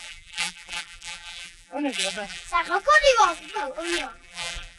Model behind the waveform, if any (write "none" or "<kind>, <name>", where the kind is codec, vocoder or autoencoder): vocoder, BigVGAN v2